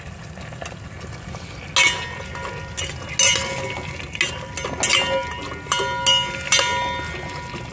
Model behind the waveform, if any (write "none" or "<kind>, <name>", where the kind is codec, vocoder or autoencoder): none